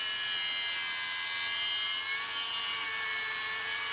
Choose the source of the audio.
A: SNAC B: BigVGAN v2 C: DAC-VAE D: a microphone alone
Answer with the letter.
D